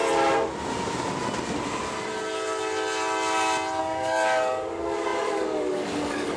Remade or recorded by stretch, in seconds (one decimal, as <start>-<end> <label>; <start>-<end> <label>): 0.0-3.8 recorded; 3.8-6.4 remade